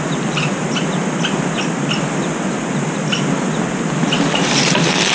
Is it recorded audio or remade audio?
recorded